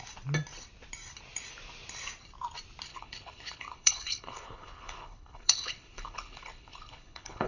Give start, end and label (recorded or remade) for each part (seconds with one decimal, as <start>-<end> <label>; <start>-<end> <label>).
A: 0.0-2.9 recorded; 2.9-7.5 remade